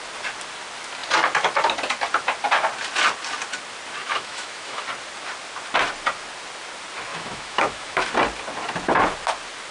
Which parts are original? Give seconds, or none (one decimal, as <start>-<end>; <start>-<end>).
0.0-4.0; 4.8-7.1; 8.1-9.7